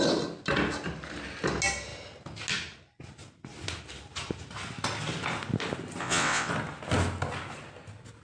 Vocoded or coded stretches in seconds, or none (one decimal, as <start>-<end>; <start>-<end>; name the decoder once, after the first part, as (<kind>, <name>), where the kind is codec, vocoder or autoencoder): 6.0-6.5 (vocoder, WaveNeXt)